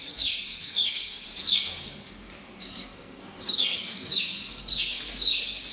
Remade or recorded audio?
remade